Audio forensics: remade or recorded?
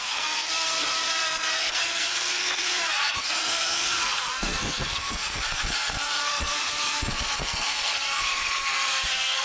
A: remade